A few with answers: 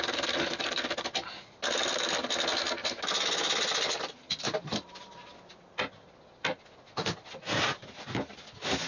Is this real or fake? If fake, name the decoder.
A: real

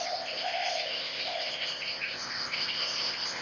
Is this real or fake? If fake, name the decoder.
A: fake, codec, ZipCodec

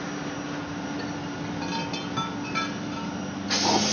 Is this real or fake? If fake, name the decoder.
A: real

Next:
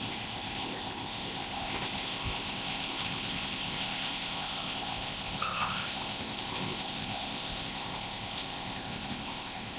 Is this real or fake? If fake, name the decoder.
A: fake, codec, ZipCodec